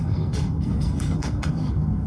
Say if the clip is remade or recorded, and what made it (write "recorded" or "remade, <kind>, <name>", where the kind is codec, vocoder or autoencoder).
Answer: remade, codec, SNAC